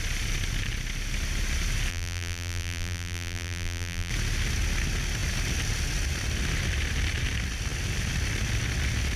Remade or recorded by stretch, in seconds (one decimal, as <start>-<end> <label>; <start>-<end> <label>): 0.0-1.9 recorded; 1.9-4.1 remade; 4.1-9.2 recorded